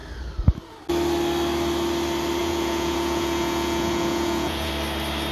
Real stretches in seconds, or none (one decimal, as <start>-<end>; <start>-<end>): 0.0-2.4; 4.7-5.3